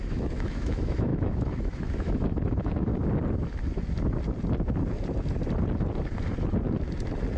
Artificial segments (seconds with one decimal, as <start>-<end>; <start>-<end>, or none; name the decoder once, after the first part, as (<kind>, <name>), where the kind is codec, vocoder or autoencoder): 0.0-2.9 (autoencoder, DAC-VAE)